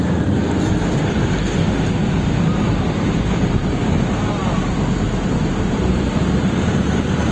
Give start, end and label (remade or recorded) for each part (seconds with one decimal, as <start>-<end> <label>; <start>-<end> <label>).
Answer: 0.0-0.4 remade; 0.4-1.0 recorded; 1.0-4.4 remade; 4.4-5.5 recorded; 5.5-7.3 remade